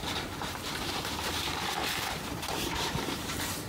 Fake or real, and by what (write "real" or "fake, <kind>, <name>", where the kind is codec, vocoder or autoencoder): fake, vocoder, BigVGAN v2